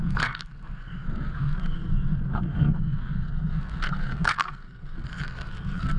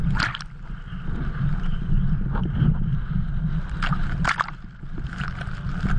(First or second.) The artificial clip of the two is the first